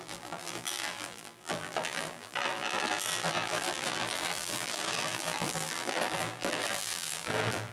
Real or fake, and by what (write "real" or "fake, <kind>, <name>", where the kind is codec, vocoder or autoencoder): fake, vocoder, BigVGAN v2